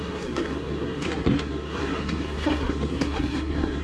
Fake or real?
fake